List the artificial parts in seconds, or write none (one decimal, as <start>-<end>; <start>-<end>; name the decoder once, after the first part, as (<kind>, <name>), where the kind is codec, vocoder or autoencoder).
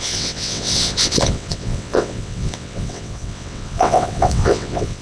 0.0-5.0 (vocoder, WaveNeXt)